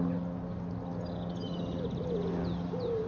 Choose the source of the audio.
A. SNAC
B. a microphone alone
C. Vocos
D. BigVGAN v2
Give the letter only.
B